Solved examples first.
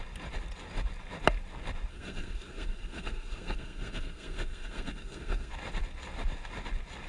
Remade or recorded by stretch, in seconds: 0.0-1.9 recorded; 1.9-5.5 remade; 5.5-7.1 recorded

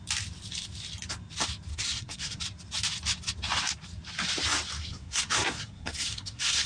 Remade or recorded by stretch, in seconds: 0.0-1.7 recorded; 1.7-2.4 remade; 2.4-4.8 recorded; 4.8-6.7 remade

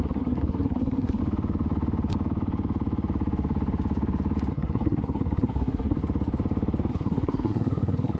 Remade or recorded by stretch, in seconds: 0.0-1.2 remade; 1.2-4.5 recorded; 4.5-6.0 remade; 6.0-6.9 recorded; 6.9-8.2 remade

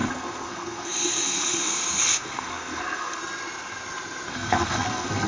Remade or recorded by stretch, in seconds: 0.0-3.2 remade; 3.2-4.3 recorded; 4.3-5.3 remade

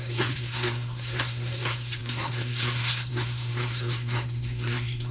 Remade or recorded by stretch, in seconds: 0.0-5.1 remade